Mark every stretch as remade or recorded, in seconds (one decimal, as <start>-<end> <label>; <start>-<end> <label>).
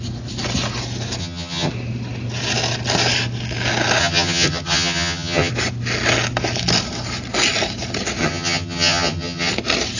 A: 0.0-1.2 recorded; 1.2-1.7 remade; 1.7-4.0 recorded; 4.0-5.5 remade; 5.5-8.2 recorded; 8.2-9.5 remade; 9.5-10.0 recorded